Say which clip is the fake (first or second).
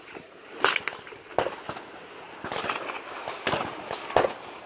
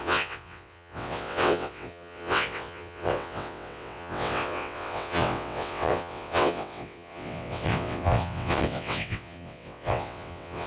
second